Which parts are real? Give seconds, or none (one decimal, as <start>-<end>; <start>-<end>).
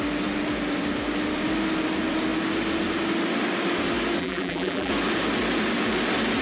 0.0-4.2; 4.9-6.4